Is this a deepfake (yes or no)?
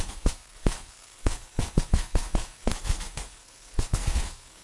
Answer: yes